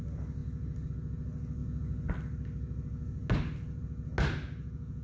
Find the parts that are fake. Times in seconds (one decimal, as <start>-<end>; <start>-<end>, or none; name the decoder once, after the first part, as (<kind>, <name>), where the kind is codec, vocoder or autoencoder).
none